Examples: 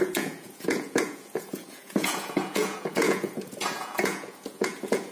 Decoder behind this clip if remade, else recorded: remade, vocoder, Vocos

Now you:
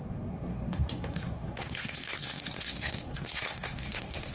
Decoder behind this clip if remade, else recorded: remade, codec, SNAC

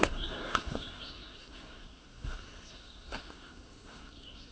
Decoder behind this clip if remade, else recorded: remade, codec, SNAC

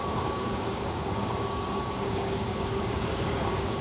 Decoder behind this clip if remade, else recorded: remade, codec, DAC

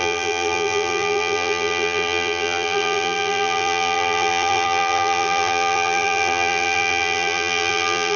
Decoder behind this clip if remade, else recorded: remade, vocoder, BigVGAN v2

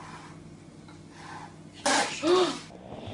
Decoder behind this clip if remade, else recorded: recorded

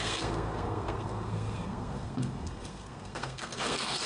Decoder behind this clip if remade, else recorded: remade, codec, SNAC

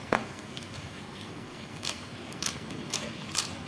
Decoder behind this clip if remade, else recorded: remade, codec, SNAC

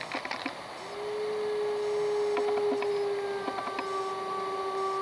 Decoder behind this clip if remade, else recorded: recorded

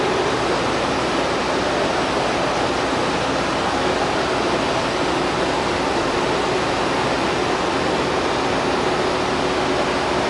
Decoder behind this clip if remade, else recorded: recorded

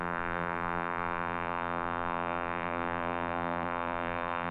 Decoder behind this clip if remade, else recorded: remade, vocoder, BigVGAN v2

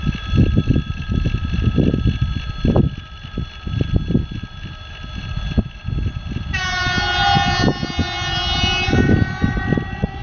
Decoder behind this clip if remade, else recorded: recorded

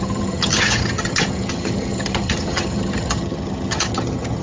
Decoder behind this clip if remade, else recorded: remade, vocoder, HiFi-GAN